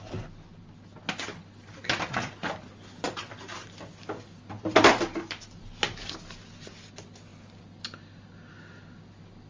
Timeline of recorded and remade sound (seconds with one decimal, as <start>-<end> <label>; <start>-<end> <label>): 0.0-9.5 recorded